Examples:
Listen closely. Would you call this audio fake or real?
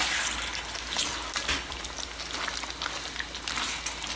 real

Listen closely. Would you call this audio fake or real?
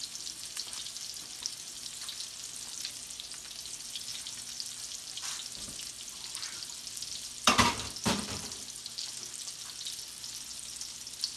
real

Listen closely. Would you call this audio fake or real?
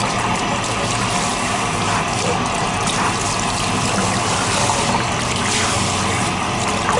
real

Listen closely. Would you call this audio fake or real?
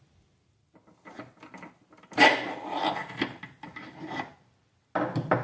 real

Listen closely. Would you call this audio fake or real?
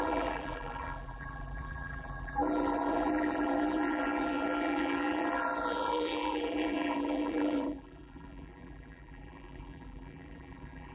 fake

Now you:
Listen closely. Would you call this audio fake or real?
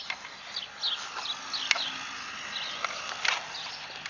real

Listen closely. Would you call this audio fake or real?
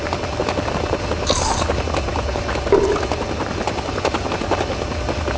real